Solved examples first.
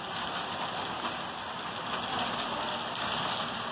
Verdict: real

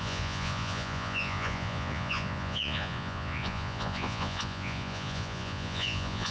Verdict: fake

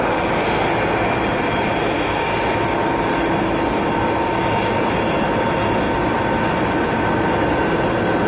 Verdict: real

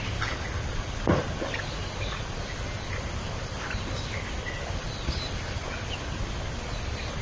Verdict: real